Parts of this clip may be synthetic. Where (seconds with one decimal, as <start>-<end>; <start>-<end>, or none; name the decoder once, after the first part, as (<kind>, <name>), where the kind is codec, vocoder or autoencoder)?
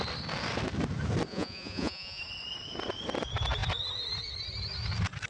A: 1.3-2.2 (vocoder, Vocos)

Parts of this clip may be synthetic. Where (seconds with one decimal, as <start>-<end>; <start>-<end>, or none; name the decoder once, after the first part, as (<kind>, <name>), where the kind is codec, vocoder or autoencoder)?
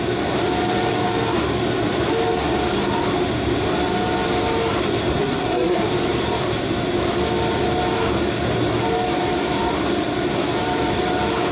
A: 5.2-5.9 (codec, SNAC)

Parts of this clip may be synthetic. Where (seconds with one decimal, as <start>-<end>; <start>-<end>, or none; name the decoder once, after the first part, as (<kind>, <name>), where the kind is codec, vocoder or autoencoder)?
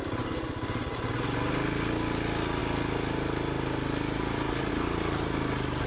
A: none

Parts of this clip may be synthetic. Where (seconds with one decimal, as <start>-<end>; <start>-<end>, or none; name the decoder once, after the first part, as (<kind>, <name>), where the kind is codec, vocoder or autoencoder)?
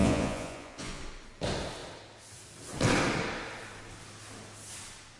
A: 0.0-1.0 (vocoder, Vocos)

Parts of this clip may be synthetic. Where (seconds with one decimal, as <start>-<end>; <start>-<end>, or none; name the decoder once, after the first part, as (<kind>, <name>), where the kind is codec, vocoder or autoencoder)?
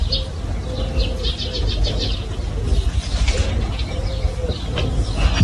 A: none